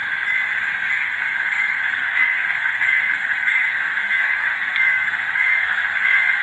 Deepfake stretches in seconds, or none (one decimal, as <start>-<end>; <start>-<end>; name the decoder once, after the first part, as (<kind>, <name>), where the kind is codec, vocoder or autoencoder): 0.9-6.4 (codec, SNAC)